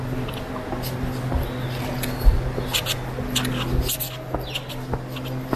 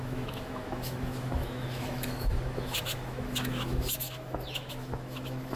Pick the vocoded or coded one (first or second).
second